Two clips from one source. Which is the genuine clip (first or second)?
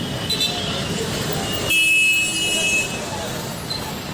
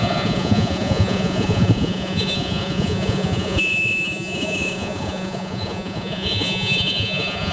first